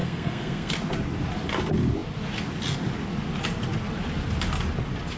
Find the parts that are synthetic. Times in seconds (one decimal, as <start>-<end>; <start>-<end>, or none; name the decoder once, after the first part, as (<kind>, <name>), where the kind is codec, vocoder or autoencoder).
0.0-0.7 (codec, SNAC)